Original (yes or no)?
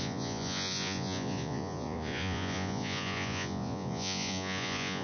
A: no